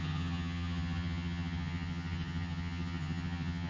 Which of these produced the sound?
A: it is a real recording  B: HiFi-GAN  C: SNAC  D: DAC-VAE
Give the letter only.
B